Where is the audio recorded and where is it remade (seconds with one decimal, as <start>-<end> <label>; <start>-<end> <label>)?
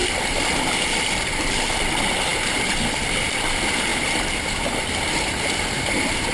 0.0-0.7 recorded; 0.7-6.3 remade